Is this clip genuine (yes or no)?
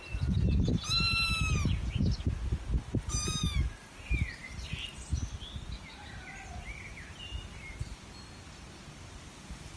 yes